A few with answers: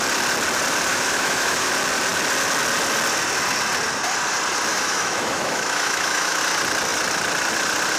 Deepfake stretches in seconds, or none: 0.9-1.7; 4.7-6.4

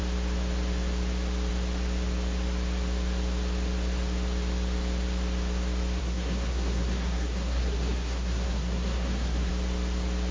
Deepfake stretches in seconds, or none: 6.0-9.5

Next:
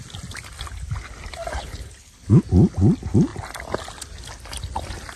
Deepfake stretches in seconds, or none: 1.5-2.4

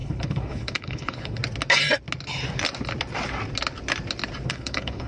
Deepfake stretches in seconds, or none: 0.0-1.4; 4.5-5.1

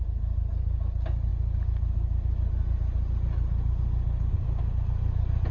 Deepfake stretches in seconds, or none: none